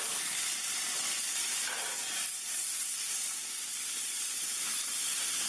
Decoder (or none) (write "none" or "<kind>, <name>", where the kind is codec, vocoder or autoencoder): none